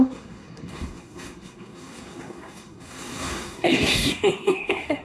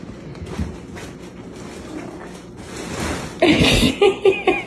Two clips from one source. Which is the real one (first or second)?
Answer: second